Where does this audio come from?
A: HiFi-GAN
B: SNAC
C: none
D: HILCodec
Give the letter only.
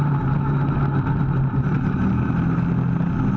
C